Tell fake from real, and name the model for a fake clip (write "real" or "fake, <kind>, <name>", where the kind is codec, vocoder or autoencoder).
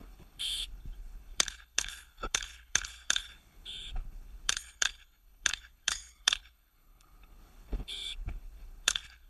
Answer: fake, codec, HILCodec